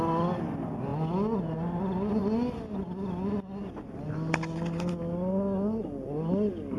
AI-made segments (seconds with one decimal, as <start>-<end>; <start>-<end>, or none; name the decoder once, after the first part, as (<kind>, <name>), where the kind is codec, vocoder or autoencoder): none